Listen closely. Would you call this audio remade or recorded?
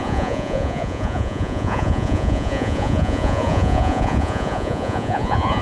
remade